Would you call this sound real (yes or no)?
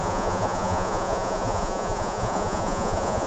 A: no